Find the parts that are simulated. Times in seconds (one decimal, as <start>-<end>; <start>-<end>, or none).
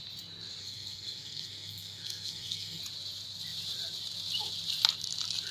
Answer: 0.6-2.8